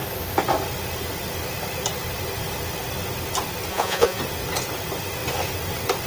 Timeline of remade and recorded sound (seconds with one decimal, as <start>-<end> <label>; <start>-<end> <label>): 0.0-3.7 recorded; 3.7-4.2 remade; 4.2-6.1 recorded